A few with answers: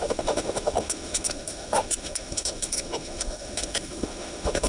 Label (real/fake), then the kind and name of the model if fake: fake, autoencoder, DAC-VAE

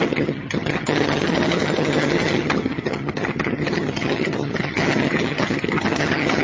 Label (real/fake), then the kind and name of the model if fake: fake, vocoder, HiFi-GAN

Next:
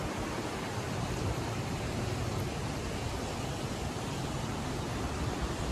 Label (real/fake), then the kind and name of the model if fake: real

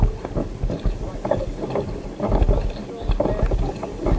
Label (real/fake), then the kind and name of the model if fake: real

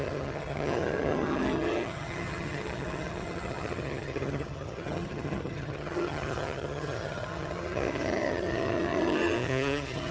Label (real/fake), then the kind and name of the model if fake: fake, vocoder, HiFi-GAN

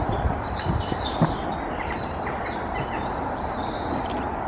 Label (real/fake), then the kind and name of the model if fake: real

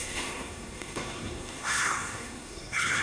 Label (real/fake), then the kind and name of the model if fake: fake, codec, SNAC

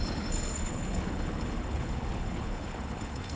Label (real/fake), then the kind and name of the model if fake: fake, codec, HILCodec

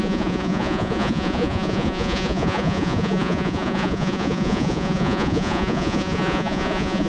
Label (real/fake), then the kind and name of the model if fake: fake, vocoder, Vocos